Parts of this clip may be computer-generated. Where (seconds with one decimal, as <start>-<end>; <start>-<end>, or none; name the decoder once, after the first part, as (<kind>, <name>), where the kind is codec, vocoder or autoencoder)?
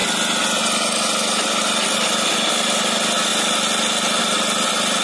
2.5-3.3 (vocoder, BigVGAN v2); 4.2-5.0